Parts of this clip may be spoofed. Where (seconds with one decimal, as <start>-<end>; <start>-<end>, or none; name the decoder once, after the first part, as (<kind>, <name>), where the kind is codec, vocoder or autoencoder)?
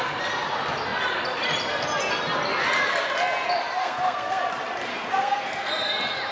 3.8-4.4 (codec, SNAC); 4.9-5.7